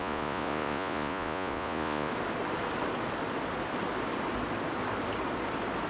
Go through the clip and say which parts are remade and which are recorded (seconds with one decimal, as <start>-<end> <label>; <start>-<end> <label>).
0.0-2.1 remade; 2.1-5.9 recorded